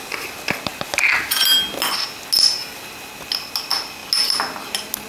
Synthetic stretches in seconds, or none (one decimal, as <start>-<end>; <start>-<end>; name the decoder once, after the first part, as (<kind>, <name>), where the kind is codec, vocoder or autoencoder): none